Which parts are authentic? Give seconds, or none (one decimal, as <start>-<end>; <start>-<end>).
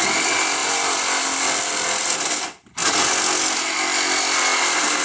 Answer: 0.0-5.0